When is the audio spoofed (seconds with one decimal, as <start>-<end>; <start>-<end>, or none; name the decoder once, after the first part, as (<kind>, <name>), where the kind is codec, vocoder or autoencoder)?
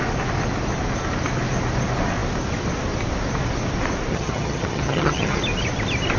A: 4.1-5.4 (vocoder, HiFi-GAN)